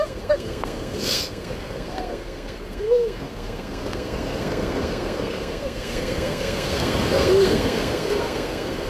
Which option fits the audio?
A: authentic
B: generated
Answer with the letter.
B